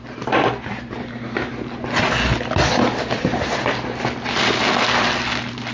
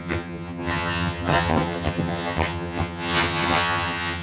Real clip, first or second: first